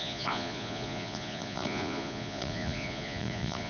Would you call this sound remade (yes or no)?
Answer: yes